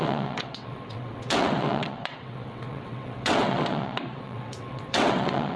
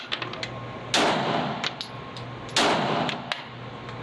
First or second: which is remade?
first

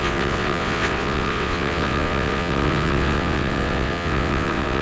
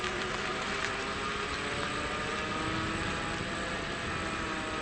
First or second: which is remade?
first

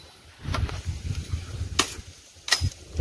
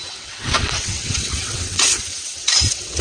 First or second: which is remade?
second